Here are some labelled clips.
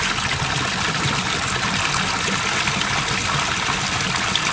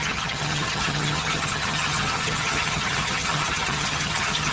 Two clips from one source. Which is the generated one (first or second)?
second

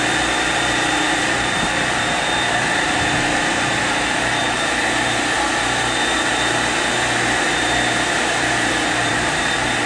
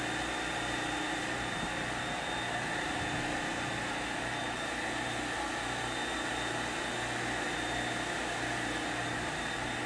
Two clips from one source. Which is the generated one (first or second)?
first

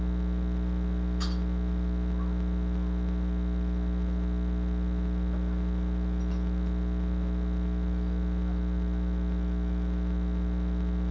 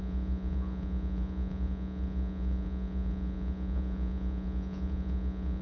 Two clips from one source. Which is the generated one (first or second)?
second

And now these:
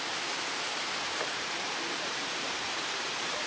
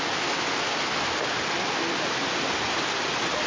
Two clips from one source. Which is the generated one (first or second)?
first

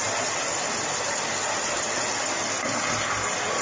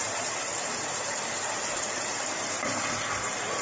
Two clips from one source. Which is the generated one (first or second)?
second